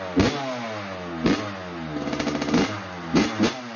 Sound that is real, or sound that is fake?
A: real